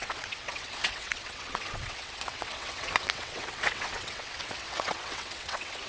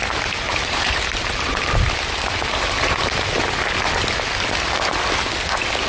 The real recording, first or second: second